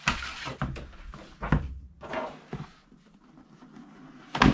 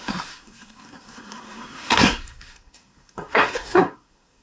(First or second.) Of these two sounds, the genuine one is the first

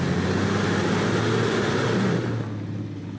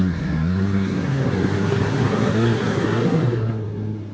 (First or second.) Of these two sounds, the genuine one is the first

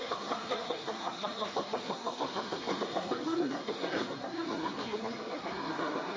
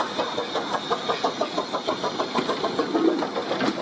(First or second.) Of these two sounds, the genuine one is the second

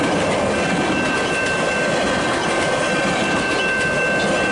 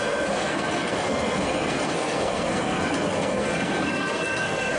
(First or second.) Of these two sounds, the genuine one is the first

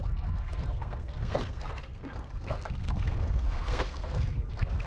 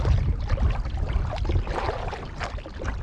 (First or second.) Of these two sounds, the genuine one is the second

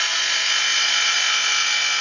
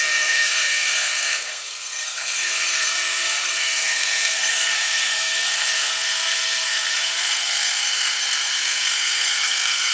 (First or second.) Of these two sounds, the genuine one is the first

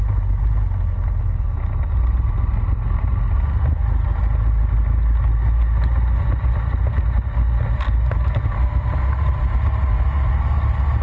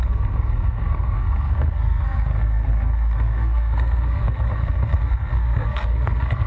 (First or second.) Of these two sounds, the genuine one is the first